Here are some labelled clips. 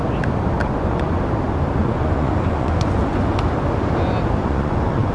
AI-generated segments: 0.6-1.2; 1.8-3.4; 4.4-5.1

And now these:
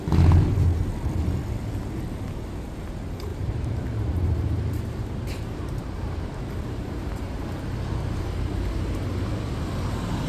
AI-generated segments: 3.3-7.1

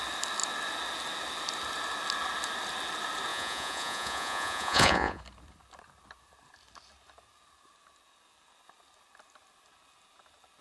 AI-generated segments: 3.3-5.2